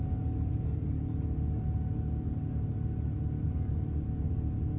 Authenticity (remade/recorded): recorded